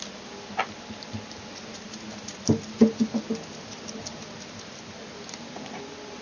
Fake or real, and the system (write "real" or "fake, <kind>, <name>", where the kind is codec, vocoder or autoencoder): real